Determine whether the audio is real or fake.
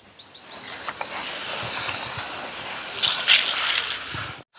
real